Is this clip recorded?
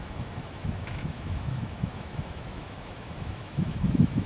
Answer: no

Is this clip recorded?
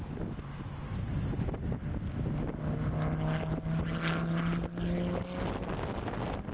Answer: yes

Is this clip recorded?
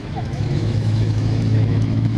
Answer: no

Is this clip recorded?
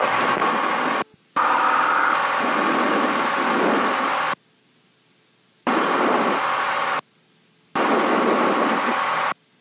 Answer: yes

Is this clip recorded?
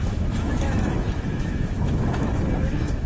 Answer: no